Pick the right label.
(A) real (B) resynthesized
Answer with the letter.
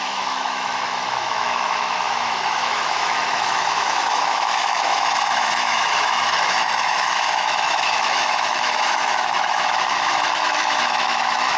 B